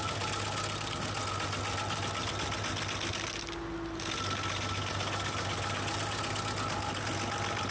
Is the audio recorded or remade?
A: recorded